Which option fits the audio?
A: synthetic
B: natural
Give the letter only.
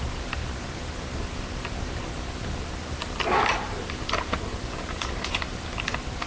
B